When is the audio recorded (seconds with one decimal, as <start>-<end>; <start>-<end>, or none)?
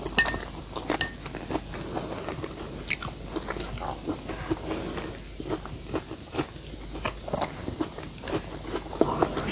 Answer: 0.0-9.5